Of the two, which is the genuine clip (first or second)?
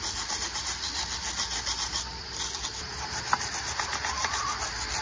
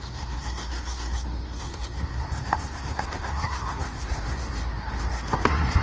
first